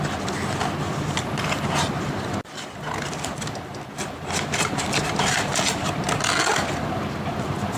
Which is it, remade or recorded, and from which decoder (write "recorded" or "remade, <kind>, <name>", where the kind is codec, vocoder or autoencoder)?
recorded